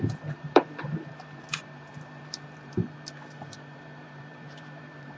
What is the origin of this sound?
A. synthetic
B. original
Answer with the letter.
A